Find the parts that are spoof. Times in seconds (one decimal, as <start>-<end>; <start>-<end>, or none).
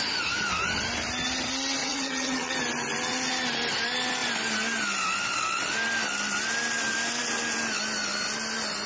1.8-2.5